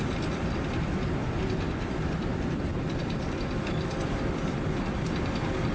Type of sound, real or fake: real